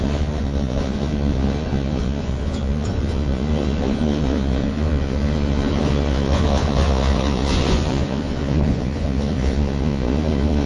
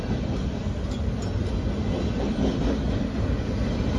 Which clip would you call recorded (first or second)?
second